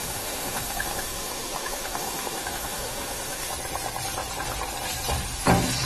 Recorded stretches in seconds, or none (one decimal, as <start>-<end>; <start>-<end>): 3.5-5.9